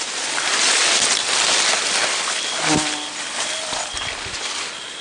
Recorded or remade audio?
recorded